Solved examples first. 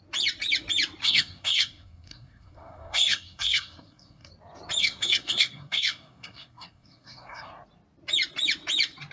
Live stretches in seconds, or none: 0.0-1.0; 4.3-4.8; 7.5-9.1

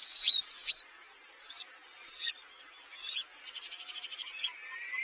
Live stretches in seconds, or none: 0.0-5.0

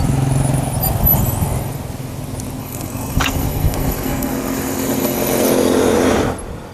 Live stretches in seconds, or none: 0.0-2.6; 5.5-6.7

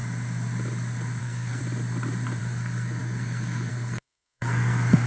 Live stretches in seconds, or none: 0.0-1.2; 1.6-2.4